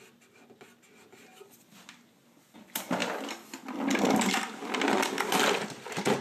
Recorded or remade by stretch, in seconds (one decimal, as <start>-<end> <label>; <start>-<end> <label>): 0.0-6.2 recorded